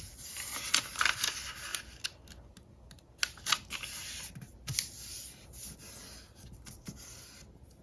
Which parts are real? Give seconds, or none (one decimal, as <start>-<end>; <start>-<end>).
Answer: 0.0-7.8